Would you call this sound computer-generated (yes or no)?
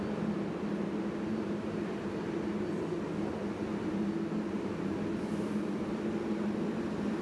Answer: no